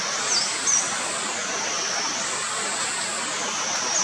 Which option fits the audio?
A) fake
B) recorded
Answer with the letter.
B